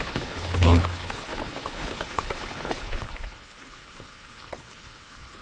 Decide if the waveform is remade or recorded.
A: remade